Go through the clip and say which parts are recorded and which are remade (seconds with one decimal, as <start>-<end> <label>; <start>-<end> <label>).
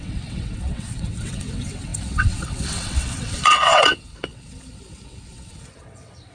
0.0-6.3 remade